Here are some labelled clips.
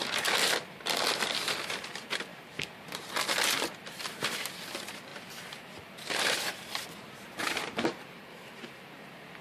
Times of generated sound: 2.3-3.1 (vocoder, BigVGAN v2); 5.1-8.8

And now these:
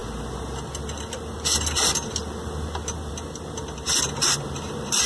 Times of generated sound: none

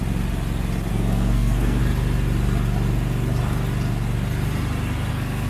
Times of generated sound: 0.9-1.8 (codec, SNAC); 5.1-5.5

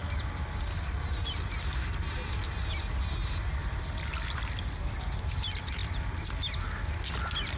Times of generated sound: none

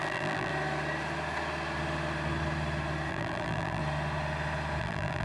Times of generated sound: 0.0-0.5 (vocoder, BigVGAN v2); 3.1-3.8; 4.8-5.2

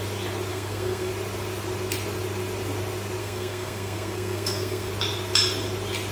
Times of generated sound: 0.5-1.1 (codec, SNAC); 3.2-4.9